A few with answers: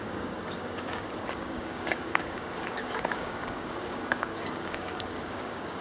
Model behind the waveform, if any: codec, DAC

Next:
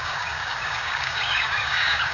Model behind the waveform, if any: codec, DAC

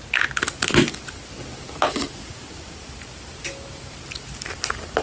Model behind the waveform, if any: none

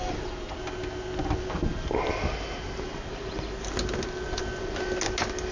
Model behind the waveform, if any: none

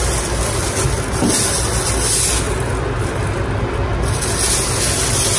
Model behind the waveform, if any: none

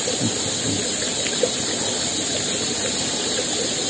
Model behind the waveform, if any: none